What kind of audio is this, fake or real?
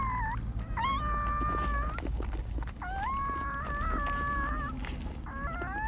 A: real